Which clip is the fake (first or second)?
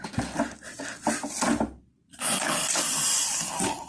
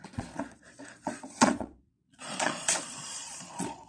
second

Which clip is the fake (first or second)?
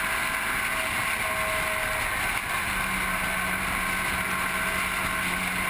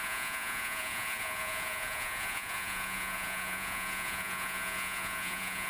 second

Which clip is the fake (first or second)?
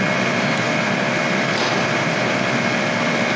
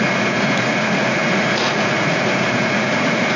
second